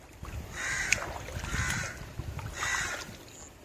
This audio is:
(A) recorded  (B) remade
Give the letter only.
A